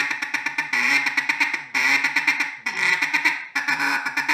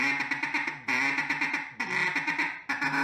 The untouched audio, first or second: second